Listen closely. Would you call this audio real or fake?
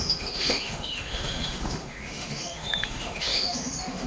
fake